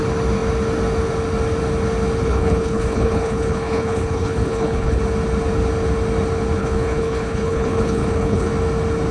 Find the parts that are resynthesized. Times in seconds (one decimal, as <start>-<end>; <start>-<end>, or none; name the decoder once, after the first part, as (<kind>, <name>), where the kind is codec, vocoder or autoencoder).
2.2-5.0 (codec, HILCodec); 6.6-8.5